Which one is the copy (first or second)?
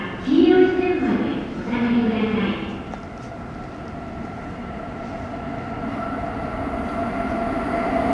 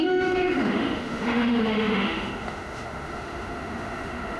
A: second